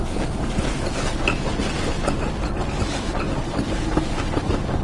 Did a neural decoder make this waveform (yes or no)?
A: no